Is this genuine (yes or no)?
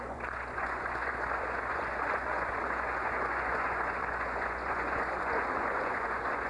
no